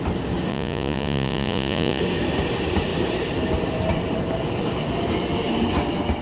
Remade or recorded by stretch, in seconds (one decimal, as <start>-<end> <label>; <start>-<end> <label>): 0.0-0.5 recorded; 0.5-2.0 remade; 2.0-6.2 recorded